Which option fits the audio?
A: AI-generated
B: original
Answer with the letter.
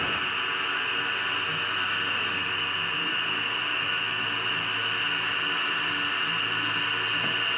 B